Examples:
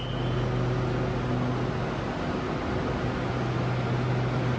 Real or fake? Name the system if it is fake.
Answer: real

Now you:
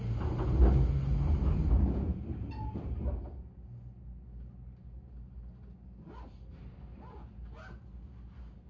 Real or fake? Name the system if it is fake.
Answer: real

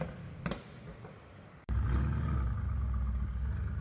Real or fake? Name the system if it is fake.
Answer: real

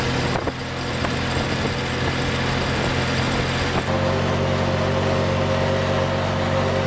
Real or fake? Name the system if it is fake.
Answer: real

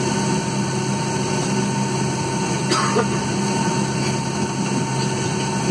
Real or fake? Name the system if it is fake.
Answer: real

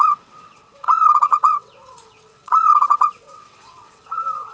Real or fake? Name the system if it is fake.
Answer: fake, vocoder, WaveNeXt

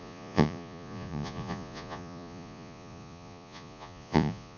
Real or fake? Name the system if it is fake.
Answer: fake, vocoder, Vocos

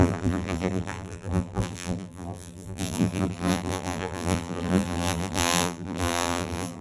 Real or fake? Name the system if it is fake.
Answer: fake, vocoder, BigVGAN v2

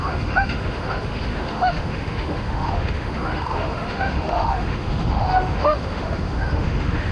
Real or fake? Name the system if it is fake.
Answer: fake, autoencoder, DAC-VAE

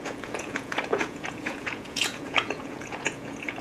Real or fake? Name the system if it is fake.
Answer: fake, vocoder, Vocos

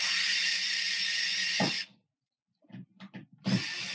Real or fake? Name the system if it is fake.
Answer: real